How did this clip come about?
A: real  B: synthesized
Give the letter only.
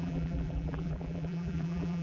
B